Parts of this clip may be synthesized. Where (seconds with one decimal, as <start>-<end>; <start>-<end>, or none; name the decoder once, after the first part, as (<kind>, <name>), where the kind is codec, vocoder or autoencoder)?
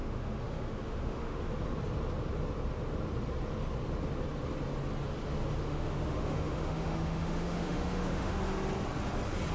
0.0-1.4 (autoencoder, DAC-VAE); 5.6-8.4